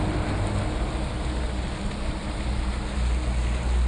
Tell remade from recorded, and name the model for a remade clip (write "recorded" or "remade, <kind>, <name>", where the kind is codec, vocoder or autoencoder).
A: recorded